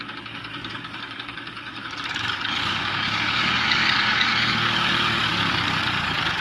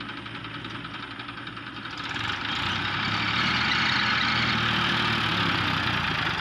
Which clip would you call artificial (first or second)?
first